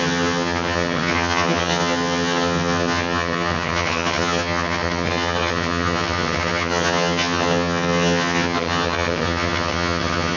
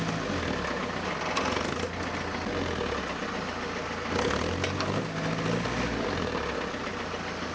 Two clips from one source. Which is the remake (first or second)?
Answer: first